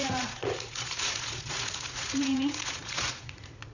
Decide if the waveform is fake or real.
fake